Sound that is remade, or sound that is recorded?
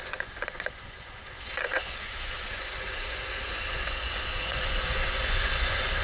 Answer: remade